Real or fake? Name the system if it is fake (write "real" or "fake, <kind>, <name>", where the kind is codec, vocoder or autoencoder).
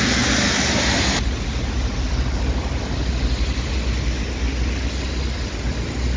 real